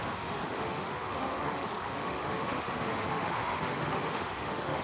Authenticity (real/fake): fake